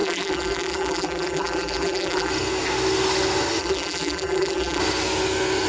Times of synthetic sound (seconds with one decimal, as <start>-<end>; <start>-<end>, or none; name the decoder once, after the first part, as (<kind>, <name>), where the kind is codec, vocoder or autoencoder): 0.0-2.3 (vocoder, BigVGAN v2); 3.6-4.8